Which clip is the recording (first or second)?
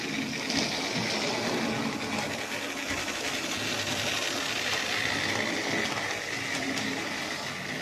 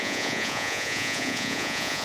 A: first